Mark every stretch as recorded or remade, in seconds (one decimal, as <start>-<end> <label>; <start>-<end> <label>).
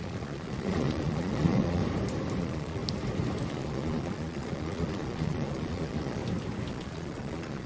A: 0.0-1.8 remade; 1.8-2.4 recorded; 2.4-2.8 remade; 2.8-3.5 recorded; 3.5-6.2 remade; 6.2-6.7 recorded; 6.7-7.7 remade